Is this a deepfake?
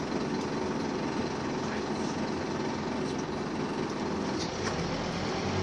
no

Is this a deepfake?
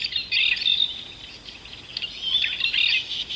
no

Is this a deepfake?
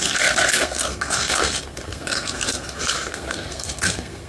yes